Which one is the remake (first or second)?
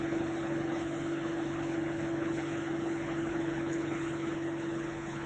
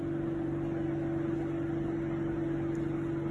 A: first